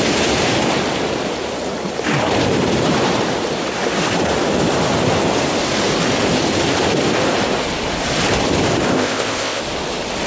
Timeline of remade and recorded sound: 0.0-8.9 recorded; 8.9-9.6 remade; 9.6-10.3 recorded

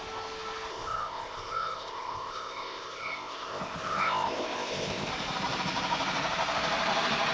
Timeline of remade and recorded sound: 0.0-0.7 recorded; 0.7-5.1 remade; 5.1-7.3 recorded

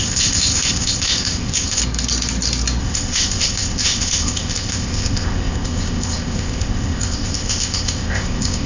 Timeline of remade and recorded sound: 0.0-1.8 remade; 1.8-2.8 recorded; 2.8-8.7 remade